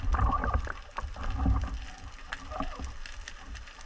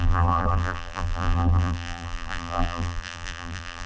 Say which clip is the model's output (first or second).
second